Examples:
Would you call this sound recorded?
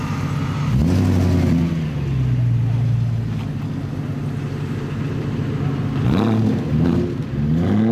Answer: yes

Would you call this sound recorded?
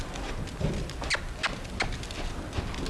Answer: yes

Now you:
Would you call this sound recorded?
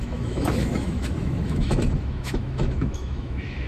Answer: no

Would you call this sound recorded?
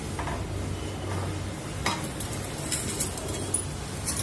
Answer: yes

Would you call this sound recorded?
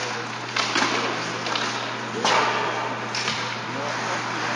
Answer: yes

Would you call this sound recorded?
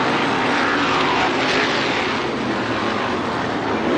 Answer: yes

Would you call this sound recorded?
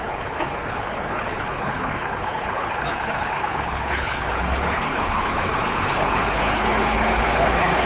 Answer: no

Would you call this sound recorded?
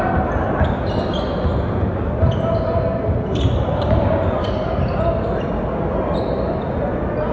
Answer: yes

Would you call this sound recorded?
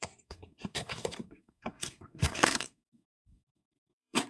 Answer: no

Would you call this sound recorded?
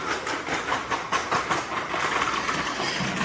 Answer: yes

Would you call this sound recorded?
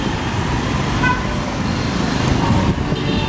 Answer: yes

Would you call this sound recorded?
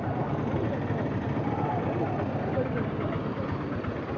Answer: yes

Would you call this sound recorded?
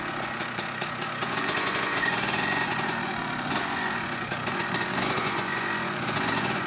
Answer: no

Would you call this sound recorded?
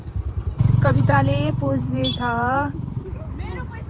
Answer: no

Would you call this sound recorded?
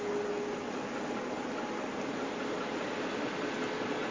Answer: yes